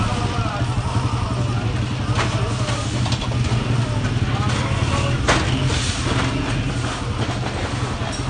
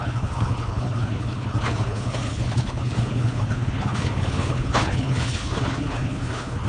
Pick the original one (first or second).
first